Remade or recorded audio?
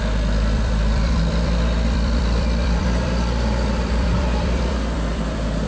remade